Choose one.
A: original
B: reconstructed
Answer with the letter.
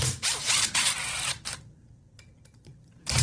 B